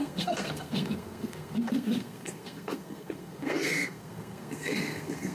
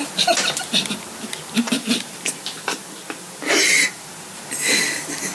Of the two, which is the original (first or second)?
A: second